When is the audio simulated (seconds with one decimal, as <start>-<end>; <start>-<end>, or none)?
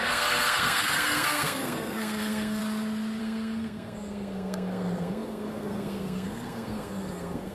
0.0-2.6; 3.2-7.5